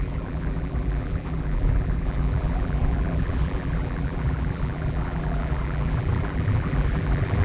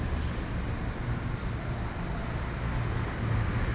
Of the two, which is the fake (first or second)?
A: first